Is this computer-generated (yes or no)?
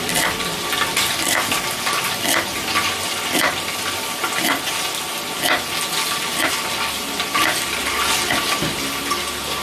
no